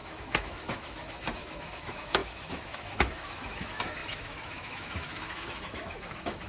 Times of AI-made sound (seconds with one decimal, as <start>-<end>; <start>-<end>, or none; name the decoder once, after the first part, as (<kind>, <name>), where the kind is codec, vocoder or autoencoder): 0.0-6.5 (autoencoder, DAC-VAE)